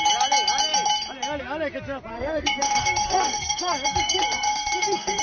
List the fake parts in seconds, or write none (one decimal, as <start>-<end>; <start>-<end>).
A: 2.1-5.2